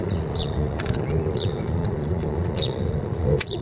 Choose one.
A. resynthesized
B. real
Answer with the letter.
A